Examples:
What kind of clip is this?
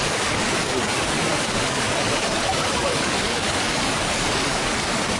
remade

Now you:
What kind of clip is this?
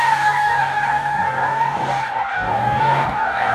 remade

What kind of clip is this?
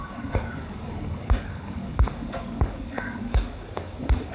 remade